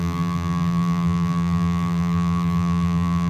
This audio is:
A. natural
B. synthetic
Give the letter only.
B